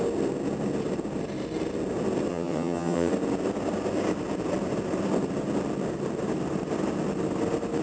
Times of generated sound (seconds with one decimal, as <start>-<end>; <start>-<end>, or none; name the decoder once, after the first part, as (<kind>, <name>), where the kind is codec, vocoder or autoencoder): 2.3-3.1 (vocoder, HiFi-GAN)